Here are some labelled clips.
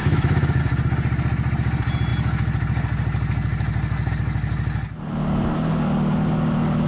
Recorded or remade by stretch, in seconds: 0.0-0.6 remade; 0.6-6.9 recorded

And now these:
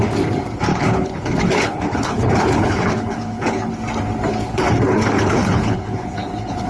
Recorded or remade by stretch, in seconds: 0.0-0.7 recorded; 0.7-3.7 remade; 3.7-4.3 recorded; 4.3-6.7 remade

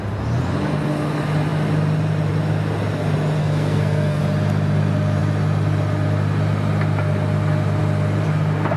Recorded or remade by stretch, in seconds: 0.0-3.4 recorded; 3.4-4.2 remade; 4.2-8.8 recorded

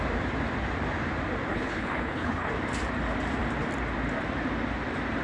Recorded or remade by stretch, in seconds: 0.0-1.5 recorded; 1.5-2.5 remade; 2.5-5.2 recorded